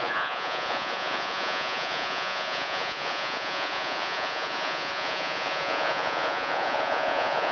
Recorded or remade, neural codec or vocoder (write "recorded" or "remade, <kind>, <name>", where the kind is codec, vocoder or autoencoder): remade, vocoder, Vocos